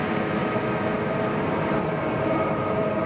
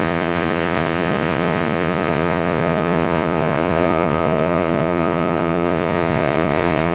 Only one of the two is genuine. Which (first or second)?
first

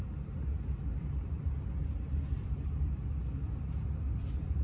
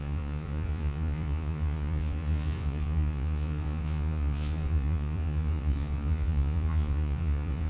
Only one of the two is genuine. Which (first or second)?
first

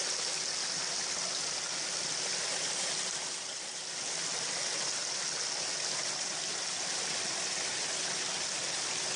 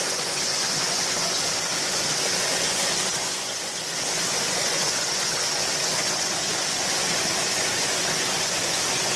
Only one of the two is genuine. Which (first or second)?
first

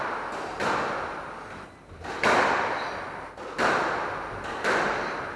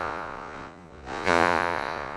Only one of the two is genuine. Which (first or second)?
first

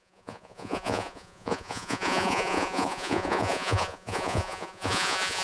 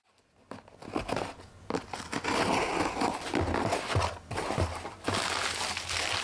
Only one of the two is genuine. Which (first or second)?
second